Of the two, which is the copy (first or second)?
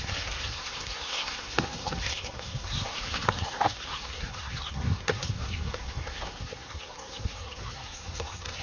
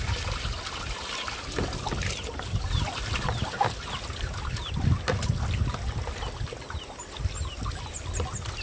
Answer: first